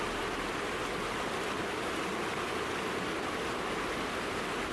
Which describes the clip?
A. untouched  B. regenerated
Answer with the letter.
A